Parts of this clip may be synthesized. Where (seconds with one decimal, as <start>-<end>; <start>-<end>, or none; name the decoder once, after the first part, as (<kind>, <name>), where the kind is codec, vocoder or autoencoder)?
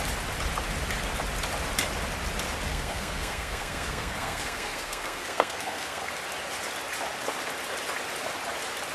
2.7-6.1 (codec, SNAC)